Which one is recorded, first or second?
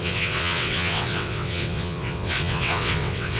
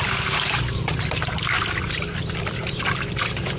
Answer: second